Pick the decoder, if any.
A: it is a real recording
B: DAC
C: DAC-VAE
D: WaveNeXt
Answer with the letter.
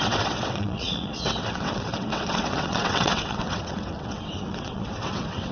D